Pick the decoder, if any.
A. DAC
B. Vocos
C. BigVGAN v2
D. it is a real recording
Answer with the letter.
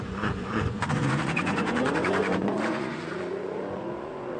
B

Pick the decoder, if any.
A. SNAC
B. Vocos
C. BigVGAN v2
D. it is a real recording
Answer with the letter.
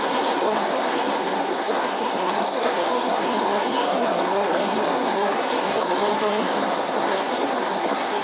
A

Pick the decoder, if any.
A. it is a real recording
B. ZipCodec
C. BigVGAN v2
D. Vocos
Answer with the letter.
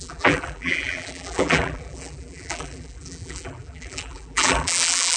C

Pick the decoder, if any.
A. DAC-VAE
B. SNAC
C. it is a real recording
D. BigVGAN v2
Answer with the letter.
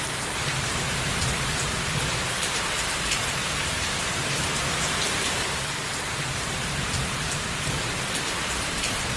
D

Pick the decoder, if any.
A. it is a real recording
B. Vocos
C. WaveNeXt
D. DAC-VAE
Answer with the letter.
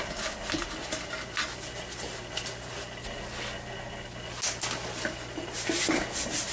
A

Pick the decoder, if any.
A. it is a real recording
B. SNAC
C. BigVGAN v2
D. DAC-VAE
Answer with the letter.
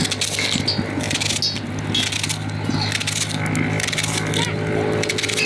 A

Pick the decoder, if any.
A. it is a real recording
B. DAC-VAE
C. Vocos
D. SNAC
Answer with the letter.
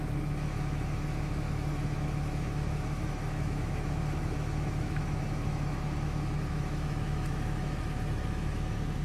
B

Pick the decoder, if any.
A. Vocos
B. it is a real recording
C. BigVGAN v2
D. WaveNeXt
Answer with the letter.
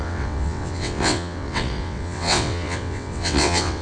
D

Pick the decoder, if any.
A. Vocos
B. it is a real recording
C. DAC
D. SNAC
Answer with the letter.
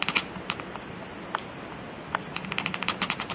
B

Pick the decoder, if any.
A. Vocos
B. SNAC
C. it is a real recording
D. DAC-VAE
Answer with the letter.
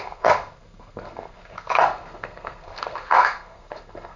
B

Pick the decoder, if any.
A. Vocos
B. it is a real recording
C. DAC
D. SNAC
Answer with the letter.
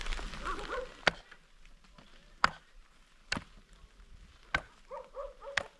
B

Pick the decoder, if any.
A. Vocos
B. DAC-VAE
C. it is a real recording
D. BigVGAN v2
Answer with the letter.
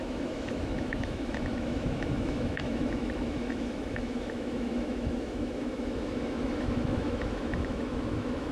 B